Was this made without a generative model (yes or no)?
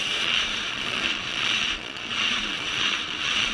no